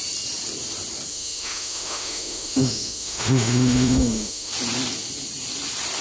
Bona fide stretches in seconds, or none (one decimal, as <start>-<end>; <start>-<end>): 0.0-1.1; 4.5-6.0